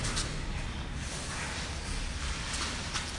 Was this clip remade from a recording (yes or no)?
no